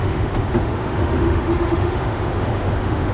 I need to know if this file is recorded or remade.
remade